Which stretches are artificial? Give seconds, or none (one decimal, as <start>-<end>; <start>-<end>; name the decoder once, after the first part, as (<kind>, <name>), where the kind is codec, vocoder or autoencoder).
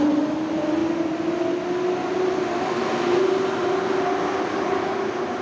none